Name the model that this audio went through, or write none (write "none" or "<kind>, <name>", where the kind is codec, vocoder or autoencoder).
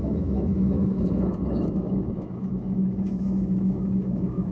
autoencoder, DAC-VAE